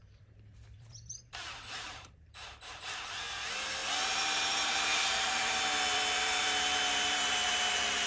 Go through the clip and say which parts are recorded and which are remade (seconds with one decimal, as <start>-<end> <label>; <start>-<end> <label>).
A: 0.0-8.1 remade